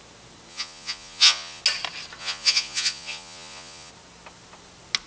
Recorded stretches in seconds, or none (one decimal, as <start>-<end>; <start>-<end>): 0.0-0.5; 1.6-2.2; 3.9-5.1